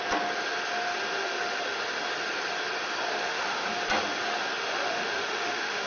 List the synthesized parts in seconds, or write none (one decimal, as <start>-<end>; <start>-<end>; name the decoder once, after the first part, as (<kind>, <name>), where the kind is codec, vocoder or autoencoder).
1.2-1.8 (autoencoder, DAC-VAE); 3.2-3.8; 4.6-5.9